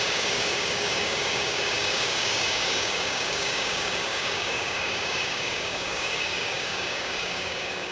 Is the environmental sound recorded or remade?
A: remade